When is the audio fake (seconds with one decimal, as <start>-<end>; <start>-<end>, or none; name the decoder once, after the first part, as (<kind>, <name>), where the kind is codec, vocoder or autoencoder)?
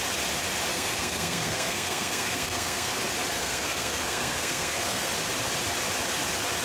0.7-3.0 (codec, SNAC); 3.4-5.1